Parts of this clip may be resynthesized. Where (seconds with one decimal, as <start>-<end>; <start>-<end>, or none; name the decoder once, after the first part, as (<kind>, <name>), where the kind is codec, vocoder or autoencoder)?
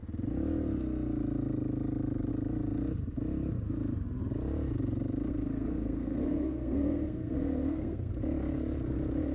5.3-8.1 (codec, SNAC)